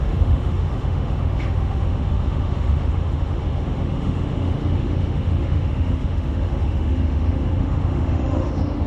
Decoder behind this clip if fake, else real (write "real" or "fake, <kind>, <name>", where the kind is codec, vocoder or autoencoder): fake, autoencoder, DAC-VAE